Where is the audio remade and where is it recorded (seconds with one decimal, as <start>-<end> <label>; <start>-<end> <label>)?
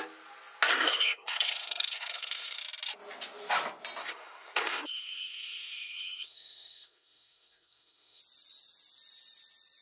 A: 0.0-0.7 recorded; 0.7-2.6 remade; 2.6-4.0 recorded; 4.0-8.2 remade; 8.2-9.8 recorded